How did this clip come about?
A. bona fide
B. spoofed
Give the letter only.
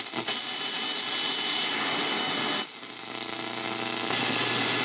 A